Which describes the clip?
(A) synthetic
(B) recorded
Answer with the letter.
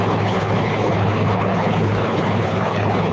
A